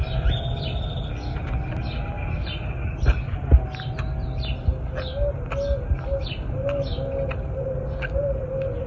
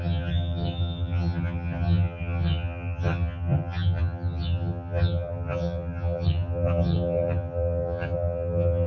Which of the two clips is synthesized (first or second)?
second